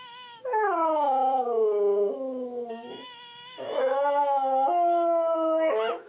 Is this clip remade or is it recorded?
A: remade